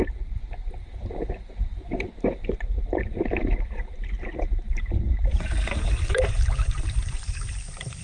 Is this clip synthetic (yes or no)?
yes